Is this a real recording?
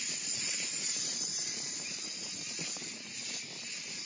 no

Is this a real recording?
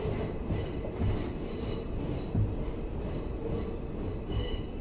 yes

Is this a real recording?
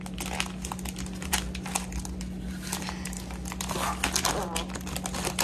yes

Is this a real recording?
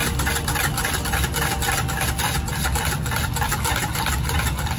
yes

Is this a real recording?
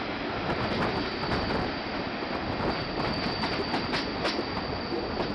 yes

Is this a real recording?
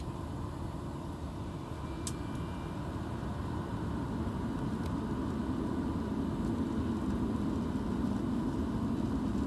yes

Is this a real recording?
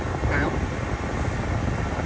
yes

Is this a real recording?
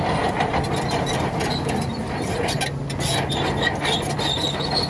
yes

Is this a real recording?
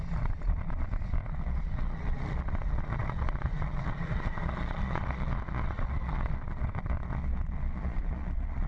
no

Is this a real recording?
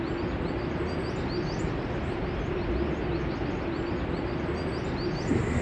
yes